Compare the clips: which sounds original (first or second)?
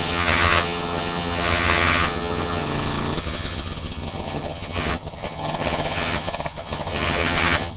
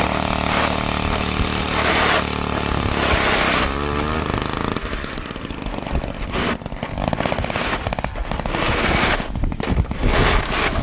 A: second